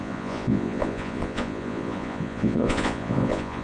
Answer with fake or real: fake